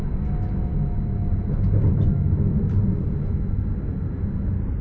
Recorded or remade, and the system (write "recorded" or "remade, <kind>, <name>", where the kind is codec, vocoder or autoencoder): recorded